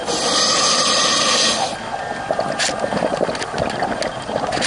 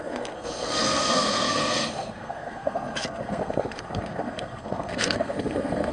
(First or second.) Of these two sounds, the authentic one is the first